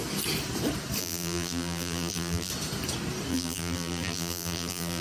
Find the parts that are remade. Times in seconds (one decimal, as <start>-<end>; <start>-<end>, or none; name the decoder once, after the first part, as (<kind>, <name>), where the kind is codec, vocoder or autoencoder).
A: 1.0-2.5 (vocoder, BigVGAN v2); 3.3-5.0